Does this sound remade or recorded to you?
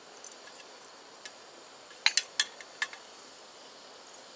recorded